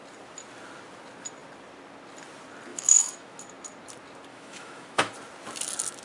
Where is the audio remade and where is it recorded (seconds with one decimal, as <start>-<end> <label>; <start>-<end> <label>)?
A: 0.0-2.7 recorded; 2.7-3.4 remade; 3.4-4.3 recorded; 4.3-5.1 remade; 5.1-6.0 recorded

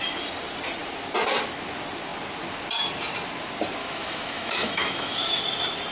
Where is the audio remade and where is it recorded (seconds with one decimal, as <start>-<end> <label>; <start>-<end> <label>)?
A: 0.0-3.8 recorded; 3.8-5.4 remade; 5.4-5.9 recorded

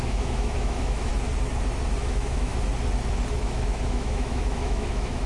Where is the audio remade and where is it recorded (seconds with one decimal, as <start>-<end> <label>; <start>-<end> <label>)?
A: 0.0-1.1 remade; 1.1-2.0 recorded; 2.0-2.5 remade; 2.5-3.4 recorded; 3.4-5.3 remade

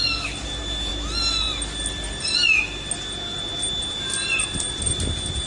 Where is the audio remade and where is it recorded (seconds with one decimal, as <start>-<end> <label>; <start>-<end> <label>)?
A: 0.0-5.5 recorded

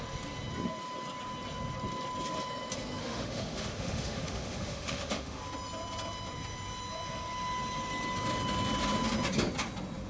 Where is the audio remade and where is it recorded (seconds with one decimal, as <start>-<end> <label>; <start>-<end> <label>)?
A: 0.0-3.0 recorded; 3.0-5.4 remade; 5.4-10.1 recorded

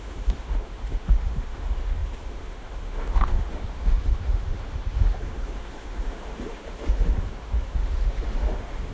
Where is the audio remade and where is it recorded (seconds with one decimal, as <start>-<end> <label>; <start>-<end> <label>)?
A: 0.0-8.9 remade

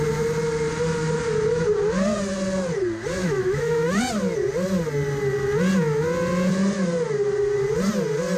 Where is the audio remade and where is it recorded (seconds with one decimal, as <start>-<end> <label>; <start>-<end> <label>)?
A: 0.0-3.2 recorded; 3.2-4.0 remade; 4.0-8.4 recorded

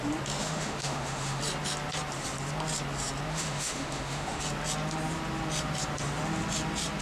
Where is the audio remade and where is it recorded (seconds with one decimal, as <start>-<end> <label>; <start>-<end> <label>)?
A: 0.0-0.4 recorded; 0.4-1.4 remade; 1.4-3.3 recorded; 3.3-4.4 remade; 4.4-7.0 recorded